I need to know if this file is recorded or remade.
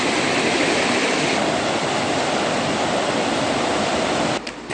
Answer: recorded